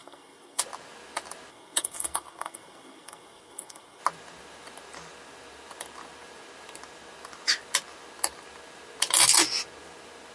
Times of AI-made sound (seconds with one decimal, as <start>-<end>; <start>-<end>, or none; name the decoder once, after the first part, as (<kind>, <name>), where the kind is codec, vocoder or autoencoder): 0.0-0.6 (codec, SNAC); 1.5-4.0

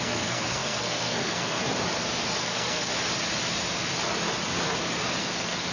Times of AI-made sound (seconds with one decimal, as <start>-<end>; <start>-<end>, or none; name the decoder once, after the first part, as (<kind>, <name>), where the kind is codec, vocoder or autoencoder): 0.0-1.6 (codec, SNAC); 2.4-2.9; 5.2-5.7